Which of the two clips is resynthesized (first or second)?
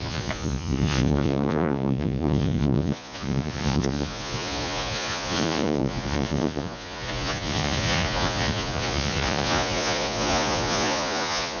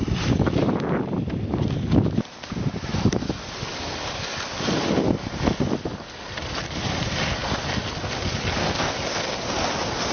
first